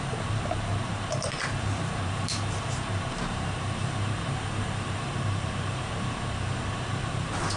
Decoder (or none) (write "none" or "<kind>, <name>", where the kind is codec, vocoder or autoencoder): vocoder, BigVGAN v2